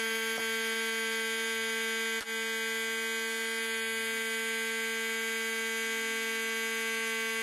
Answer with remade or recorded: recorded